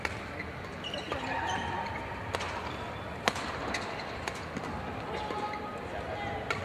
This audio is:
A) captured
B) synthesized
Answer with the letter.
A